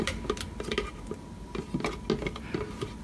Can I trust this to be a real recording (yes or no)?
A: yes